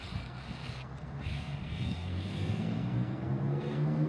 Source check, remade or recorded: remade